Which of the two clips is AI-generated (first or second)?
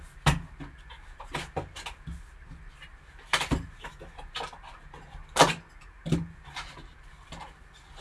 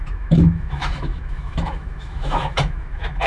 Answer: second